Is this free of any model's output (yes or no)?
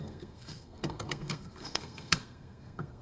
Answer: no